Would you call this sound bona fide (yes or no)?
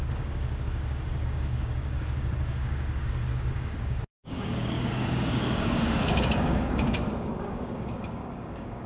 no